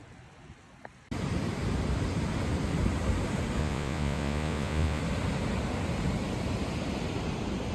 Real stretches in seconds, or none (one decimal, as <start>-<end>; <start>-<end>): 0.0-3.6; 5.0-7.7